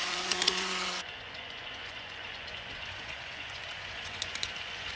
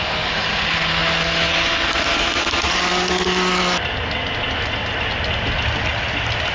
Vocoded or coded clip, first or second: first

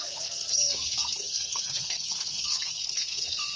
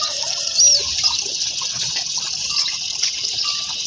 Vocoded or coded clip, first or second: first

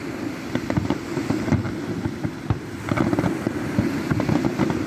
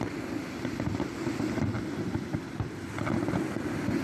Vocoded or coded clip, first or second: first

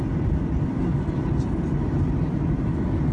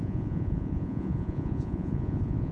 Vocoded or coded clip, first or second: second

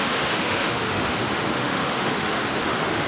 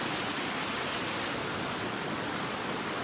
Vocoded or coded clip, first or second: first